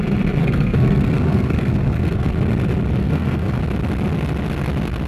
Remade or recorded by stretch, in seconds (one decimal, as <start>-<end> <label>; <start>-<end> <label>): 0.0-0.4 recorded; 0.4-2.3 remade; 2.3-3.0 recorded; 3.0-3.6 remade; 3.6-5.1 recorded